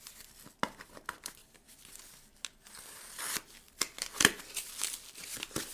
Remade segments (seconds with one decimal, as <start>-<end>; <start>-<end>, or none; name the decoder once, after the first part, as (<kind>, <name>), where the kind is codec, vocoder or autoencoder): none